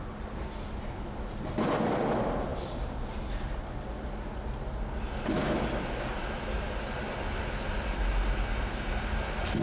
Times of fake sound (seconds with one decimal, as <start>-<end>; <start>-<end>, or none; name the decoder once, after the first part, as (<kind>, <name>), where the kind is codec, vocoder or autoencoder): 2.5-3.7 (vocoder, BigVGAN v2)